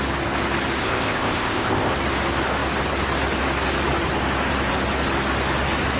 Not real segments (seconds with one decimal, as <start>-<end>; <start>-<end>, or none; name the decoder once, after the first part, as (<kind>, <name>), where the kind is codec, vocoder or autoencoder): 0.8-1.9 (codec, ZipCodec)